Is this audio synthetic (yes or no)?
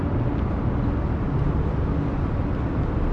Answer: no